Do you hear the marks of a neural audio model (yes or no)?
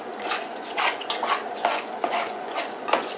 yes